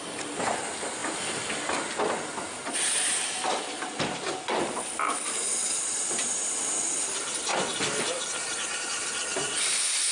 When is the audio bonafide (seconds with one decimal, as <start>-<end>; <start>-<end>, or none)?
1.0-2.0; 7.5-8.8